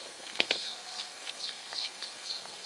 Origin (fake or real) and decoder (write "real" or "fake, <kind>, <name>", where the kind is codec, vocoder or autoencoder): fake, codec, SNAC